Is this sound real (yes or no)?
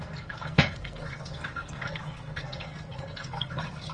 no